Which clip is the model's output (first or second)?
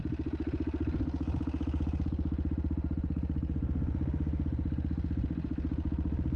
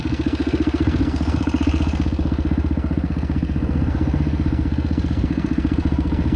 second